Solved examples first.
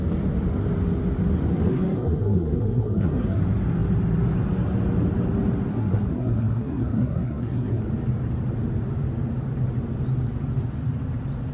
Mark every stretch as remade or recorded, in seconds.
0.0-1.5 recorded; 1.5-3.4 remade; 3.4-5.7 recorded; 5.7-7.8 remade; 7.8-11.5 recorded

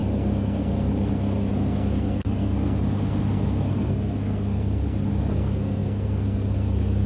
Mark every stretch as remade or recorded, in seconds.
0.0-7.1 remade